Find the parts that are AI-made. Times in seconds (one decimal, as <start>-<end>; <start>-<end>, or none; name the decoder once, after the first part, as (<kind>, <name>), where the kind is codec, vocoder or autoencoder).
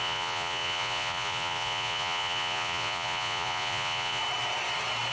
0.0-4.2 (vocoder, Vocos)